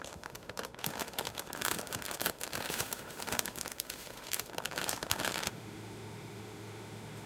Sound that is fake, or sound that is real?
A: fake